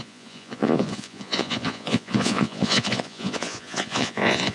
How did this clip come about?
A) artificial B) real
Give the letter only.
A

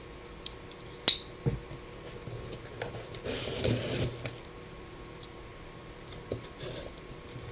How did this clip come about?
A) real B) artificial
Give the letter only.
A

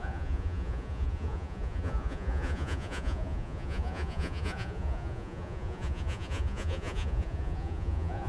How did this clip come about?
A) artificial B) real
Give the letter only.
A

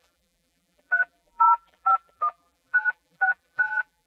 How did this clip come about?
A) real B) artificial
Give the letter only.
B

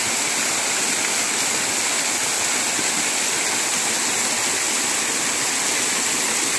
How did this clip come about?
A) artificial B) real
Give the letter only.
B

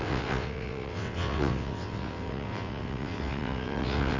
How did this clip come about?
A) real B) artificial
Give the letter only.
B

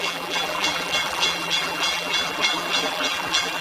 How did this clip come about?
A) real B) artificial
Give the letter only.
B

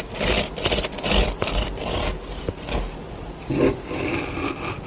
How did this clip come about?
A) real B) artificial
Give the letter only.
A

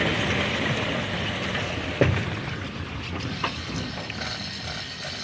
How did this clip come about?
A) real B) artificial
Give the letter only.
A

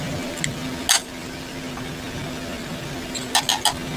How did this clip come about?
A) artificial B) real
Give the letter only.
B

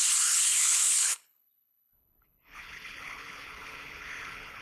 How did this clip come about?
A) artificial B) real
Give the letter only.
A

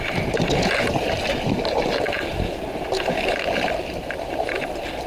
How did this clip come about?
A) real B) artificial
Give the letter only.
A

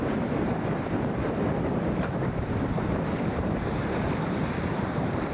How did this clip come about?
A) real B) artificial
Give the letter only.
B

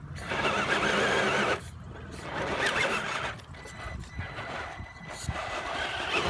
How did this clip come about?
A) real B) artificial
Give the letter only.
A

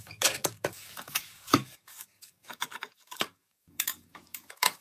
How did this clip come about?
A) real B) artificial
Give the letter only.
B